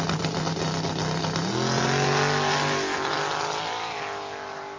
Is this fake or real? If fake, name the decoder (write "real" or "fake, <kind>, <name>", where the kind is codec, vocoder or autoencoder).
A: real